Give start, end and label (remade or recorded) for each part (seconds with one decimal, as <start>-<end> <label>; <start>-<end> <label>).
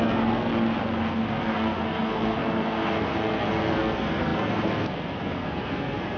0.0-0.5 remade; 0.5-1.1 recorded; 1.1-6.2 remade